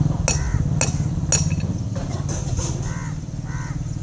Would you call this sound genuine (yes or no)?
yes